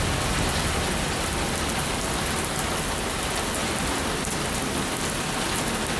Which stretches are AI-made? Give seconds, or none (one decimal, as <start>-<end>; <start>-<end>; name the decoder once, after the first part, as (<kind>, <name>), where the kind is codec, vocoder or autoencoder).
none